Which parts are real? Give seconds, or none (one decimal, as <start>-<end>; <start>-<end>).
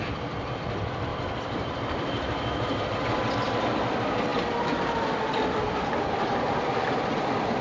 none